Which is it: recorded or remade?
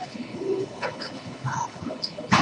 remade